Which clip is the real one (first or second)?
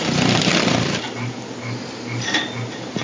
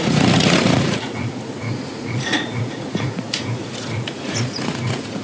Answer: first